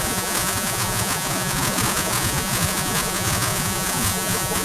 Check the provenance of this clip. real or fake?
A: fake